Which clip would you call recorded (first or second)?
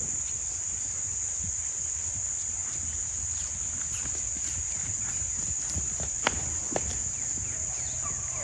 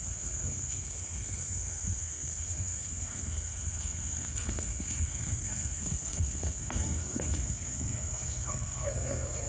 first